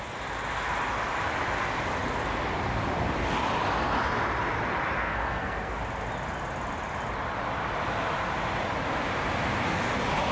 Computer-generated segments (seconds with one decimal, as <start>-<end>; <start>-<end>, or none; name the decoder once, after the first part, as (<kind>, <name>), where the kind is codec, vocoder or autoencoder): 5.0-5.8 (codec, SNAC)